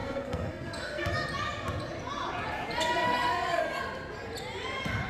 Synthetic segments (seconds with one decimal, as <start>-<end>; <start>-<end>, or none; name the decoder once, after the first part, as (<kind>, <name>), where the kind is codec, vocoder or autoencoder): 0.0-1.1 (codec, SNAC); 3.0-3.8